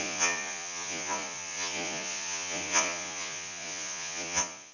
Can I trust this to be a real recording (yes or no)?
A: no